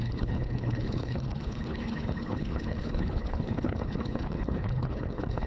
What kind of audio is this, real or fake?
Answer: fake